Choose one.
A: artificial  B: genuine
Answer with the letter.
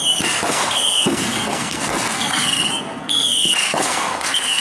A